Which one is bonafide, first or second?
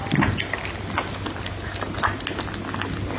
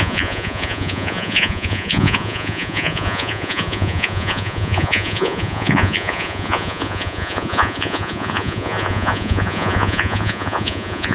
first